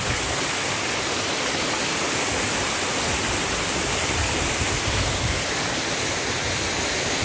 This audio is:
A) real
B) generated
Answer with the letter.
A